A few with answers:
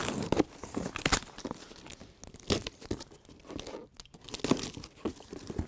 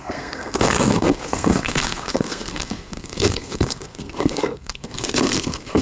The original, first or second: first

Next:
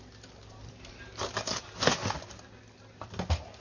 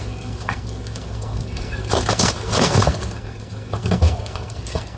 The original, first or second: first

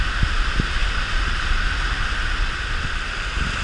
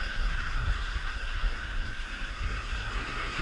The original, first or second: first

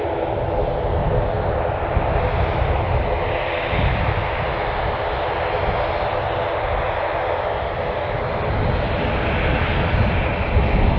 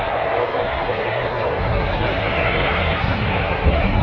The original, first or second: first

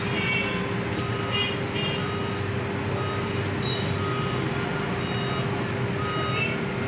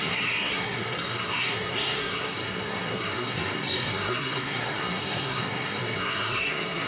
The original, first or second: first